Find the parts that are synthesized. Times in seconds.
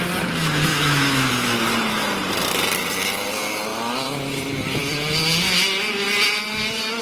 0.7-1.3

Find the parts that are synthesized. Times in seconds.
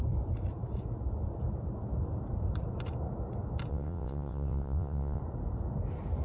3.7-5.2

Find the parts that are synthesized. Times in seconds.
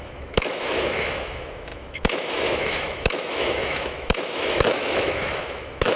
0.0-6.0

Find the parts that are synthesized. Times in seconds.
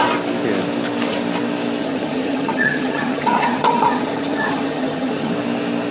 1.8-5.3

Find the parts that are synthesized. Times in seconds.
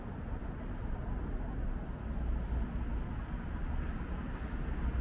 none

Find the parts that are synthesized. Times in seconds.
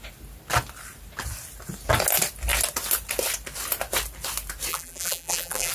4.7-5.7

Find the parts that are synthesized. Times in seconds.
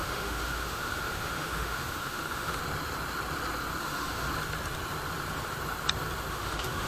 0.0-2.6; 3.8-4.3; 6.3-6.9